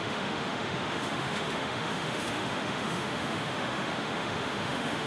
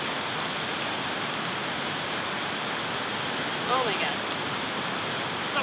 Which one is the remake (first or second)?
first